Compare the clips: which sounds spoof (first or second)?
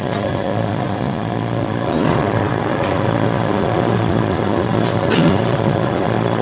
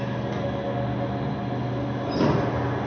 first